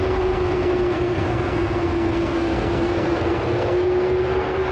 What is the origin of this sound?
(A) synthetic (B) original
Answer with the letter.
A